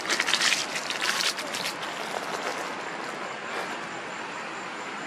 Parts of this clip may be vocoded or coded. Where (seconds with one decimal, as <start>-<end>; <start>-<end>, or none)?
0.6-1.4

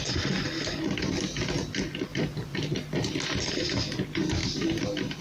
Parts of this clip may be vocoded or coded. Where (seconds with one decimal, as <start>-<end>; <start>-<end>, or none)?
2.1-3.2

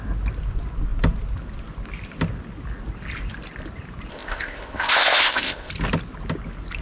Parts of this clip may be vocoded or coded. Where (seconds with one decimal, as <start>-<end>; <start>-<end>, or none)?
4.1-5.7

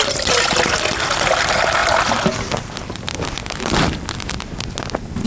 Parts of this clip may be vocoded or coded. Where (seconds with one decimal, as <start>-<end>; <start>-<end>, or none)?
none

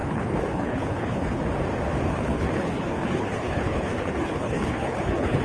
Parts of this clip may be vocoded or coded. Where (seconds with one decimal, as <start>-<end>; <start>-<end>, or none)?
0.0-1.4; 2.1-5.4

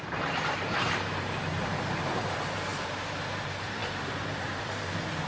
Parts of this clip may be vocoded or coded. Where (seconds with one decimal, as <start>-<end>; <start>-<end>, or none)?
0.0-5.3

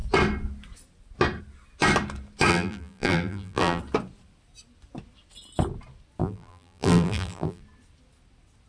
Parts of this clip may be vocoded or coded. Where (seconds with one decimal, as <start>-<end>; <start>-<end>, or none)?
2.5-3.8; 6.2-7.6

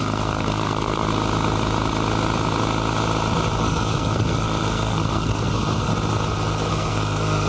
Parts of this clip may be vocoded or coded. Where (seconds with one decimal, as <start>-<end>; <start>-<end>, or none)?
0.0-1.1; 3.6-5.9; 6.7-7.5